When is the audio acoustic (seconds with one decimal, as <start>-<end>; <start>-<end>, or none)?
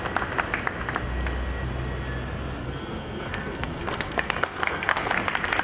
0.0-2.6; 5.1-5.6